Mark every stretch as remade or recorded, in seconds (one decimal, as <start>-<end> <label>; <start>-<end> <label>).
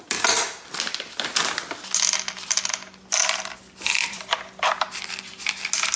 0.0-6.0 recorded